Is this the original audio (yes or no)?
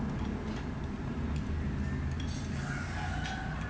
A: yes